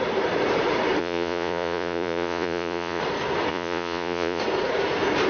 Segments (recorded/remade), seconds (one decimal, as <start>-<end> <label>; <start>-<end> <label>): 0.0-1.0 recorded; 1.0-3.0 remade; 3.0-3.5 recorded; 3.5-4.4 remade; 4.4-5.3 recorded